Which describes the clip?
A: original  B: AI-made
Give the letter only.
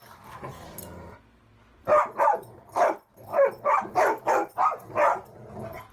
A